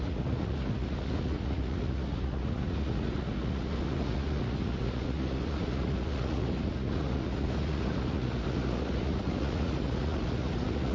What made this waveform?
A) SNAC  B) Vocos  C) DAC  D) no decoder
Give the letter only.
B